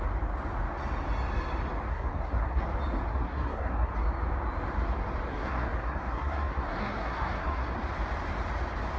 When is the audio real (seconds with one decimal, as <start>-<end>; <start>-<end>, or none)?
0.0-1.9; 2.6-3.1; 3.9-5.3; 7.7-9.0